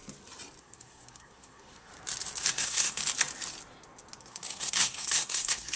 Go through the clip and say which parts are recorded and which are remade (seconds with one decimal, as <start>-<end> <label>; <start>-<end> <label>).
0.0-0.6 recorded; 0.6-1.9 remade; 1.9-2.5 recorded; 2.5-3.0 remade; 3.0-4.2 recorded; 4.2-5.8 remade